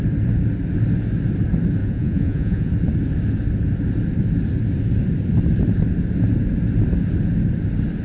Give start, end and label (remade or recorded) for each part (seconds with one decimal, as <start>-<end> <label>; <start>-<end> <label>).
0.0-1.8 recorded; 1.8-2.7 remade; 2.7-8.0 recorded

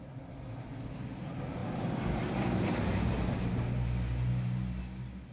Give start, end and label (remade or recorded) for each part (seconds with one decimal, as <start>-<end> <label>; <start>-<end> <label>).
0.0-5.3 recorded